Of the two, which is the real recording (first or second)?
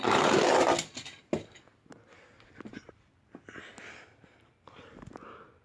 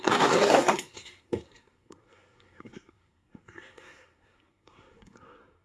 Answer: first